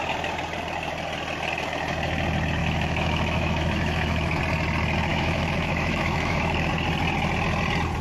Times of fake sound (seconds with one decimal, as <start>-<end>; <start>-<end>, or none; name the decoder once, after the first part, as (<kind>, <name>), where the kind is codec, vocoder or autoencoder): 2.6-4.4 (autoencoder, DAC-VAE); 5.1-6.7